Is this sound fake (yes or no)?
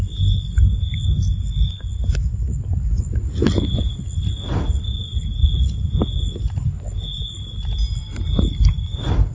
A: no